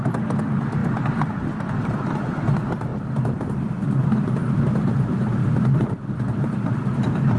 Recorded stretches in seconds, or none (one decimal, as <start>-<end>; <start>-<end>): 0.0-5.4; 6.1-7.4